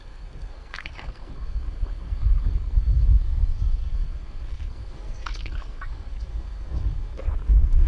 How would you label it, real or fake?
fake